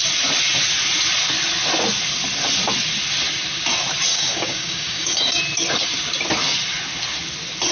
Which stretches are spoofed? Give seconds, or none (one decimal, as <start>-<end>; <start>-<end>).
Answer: 4.1-5.4